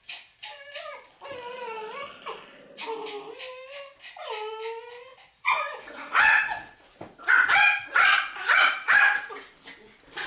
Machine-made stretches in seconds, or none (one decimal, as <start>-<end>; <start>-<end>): 5.1-9.3